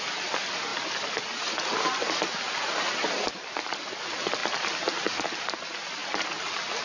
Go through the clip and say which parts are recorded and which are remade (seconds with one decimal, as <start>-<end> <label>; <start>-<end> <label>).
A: 0.0-6.8 recorded